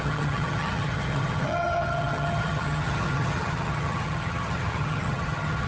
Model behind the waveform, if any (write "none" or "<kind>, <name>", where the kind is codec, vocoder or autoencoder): vocoder, HiFi-GAN